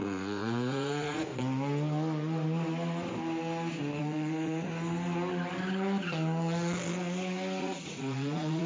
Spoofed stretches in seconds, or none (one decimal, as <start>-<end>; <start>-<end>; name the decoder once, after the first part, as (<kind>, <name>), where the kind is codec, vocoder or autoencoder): 0.0-1.3 (vocoder, Vocos); 4.0-4.7; 7.6-8.7

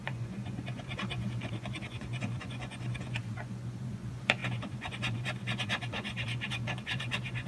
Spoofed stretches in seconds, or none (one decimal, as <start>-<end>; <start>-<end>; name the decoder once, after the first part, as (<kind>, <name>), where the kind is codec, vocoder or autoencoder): 0.0-7.5 (vocoder, Vocos)

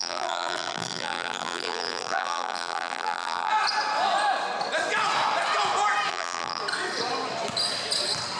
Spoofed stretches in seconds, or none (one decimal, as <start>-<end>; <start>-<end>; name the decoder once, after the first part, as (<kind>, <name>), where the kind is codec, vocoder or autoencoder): 0.0-3.5 (vocoder, BigVGAN v2); 6.1-6.6

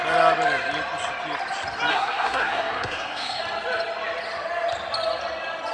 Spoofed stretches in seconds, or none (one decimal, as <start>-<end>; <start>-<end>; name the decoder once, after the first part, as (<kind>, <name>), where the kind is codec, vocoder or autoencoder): 1.9-3.4 (codec, SNAC)

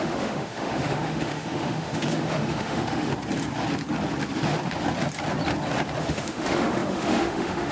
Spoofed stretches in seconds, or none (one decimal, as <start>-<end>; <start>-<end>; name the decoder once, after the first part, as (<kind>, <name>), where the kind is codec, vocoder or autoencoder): 0.0-3.1 (autoencoder, DAC-VAE); 6.0-7.7

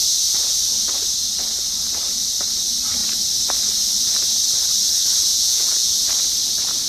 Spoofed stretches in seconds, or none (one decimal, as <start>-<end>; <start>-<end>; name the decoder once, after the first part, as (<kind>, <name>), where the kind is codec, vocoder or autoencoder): 5.3-6.0 (vocoder, Vocos)